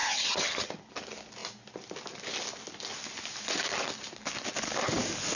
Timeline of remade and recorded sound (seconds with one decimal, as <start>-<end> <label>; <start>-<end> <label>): 0.0-0.7 remade; 0.7-5.4 recorded